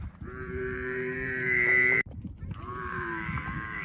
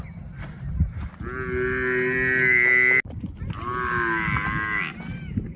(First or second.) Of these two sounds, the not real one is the first